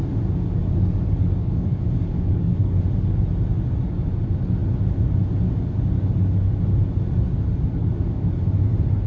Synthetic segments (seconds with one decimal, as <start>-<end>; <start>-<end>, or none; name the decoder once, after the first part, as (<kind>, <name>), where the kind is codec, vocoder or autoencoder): 1.4-2.8 (codec, DAC); 7.8-8.4